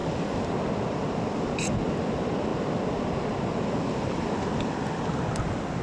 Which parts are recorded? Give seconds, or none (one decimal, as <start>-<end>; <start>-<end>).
0.0-5.8